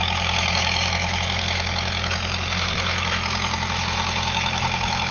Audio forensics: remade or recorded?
remade